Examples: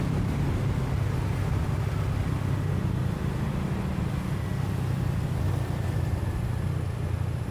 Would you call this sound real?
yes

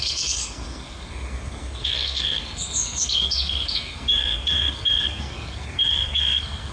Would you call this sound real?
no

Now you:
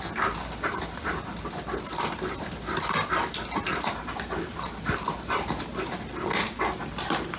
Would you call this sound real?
yes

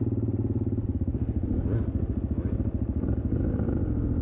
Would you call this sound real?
yes